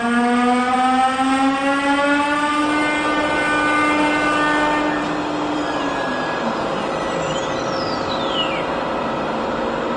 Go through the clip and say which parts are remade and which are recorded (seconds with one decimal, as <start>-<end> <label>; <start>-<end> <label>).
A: 0.0-10.0 recorded